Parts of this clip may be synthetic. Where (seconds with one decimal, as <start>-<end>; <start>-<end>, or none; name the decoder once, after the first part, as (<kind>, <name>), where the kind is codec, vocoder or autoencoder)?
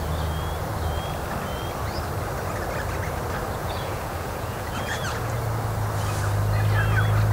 3.6-5.3 (vocoder, Vocos)